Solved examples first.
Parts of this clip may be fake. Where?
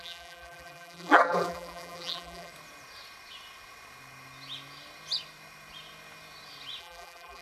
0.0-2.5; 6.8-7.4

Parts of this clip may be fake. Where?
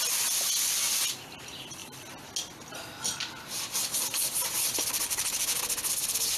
none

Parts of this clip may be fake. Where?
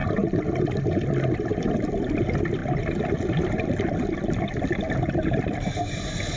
none